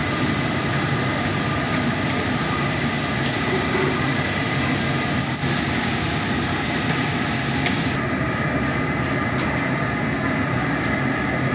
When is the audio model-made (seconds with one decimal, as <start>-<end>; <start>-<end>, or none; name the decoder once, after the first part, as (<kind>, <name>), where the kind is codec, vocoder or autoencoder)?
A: none

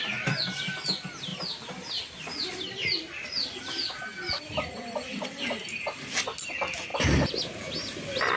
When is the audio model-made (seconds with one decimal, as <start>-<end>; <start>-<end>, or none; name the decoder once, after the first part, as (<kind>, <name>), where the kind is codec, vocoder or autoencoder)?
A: 1.3-2.2 (vocoder, BigVGAN v2); 4.1-4.7